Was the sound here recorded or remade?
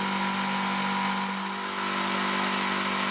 recorded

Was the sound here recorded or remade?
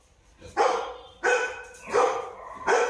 remade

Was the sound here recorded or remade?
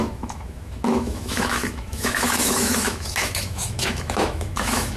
remade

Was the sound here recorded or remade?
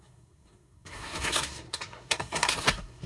remade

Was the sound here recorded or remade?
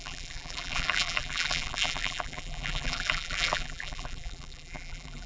remade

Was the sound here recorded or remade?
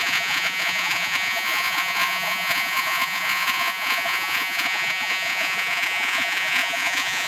remade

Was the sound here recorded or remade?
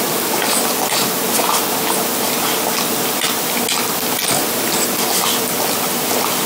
recorded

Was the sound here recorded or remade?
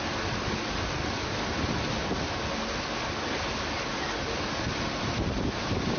recorded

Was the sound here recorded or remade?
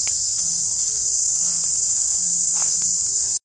remade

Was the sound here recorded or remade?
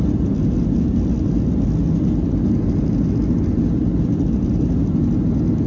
recorded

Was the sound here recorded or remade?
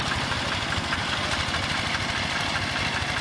recorded